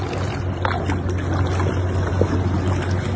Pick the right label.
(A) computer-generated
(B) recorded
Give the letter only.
B